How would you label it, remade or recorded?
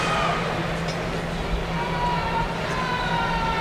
recorded